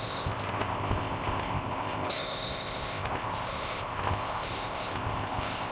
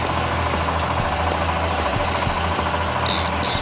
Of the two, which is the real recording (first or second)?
second